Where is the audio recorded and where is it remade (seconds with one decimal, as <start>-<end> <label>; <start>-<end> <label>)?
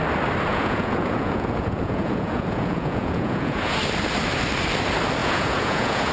0.0-0.5 recorded; 0.5-3.8 remade; 3.8-5.2 recorded; 5.2-6.1 remade